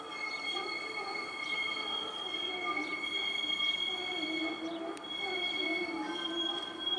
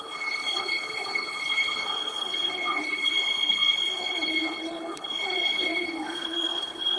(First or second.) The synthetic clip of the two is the second